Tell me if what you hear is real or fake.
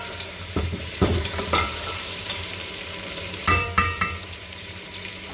fake